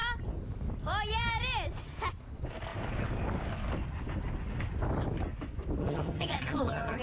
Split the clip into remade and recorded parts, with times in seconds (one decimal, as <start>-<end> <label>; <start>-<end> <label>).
0.0-5.8 recorded; 5.8-7.0 remade